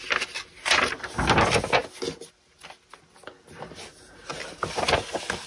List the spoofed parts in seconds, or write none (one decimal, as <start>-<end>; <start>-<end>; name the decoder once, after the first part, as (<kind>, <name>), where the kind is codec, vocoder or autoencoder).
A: none